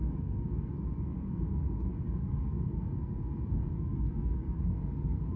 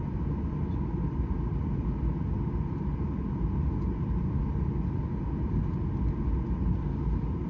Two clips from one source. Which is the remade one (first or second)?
first